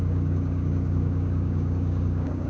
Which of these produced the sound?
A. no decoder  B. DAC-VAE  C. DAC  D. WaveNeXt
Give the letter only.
C